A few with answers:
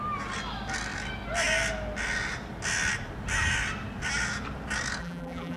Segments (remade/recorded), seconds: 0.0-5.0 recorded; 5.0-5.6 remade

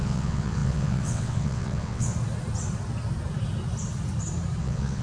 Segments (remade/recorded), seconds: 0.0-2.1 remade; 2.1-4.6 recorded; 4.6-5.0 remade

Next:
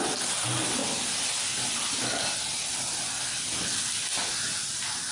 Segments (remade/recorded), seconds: 0.0-0.8 recorded; 0.8-1.4 remade; 1.4-5.1 recorded